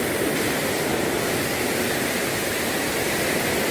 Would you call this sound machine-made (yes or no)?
no